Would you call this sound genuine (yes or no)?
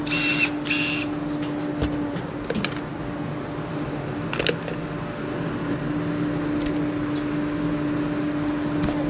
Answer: yes